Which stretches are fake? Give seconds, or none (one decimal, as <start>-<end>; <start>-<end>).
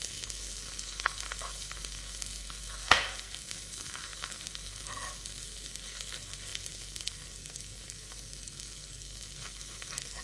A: 0.0-10.2